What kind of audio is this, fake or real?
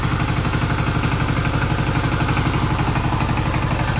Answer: real